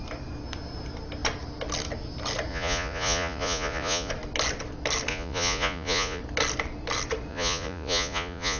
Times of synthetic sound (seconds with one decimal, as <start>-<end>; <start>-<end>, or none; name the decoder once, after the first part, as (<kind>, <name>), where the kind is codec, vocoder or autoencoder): 2.5-4.1 (vocoder, Vocos); 5.1-6.2; 7.3-8.6